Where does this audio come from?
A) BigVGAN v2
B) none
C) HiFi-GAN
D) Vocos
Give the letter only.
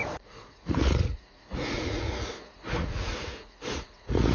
D